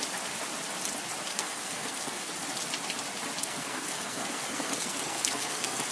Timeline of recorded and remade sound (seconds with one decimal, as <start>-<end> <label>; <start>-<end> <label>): 0.0-1.3 recorded; 1.3-2.3 remade; 2.3-3.4 recorded; 3.4-5.9 remade